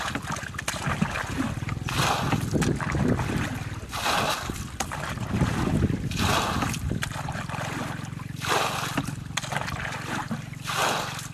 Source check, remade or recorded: recorded